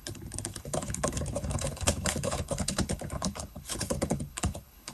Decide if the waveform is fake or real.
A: fake